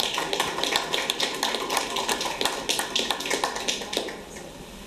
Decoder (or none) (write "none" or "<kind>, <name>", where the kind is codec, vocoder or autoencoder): none